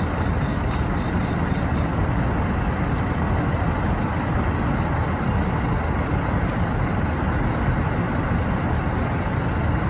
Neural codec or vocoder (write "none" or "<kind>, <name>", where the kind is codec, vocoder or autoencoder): none